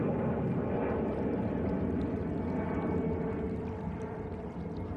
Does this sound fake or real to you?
real